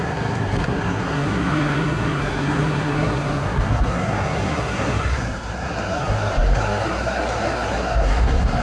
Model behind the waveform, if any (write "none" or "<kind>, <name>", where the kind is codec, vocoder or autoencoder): codec, SNAC